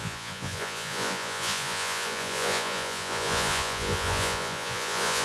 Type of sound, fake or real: fake